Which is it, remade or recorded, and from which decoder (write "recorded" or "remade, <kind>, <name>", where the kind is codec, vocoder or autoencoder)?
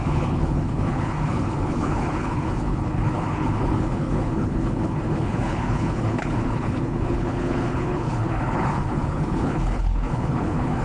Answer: remade, codec, HILCodec